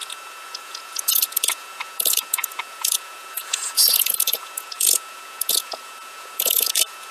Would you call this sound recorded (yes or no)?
no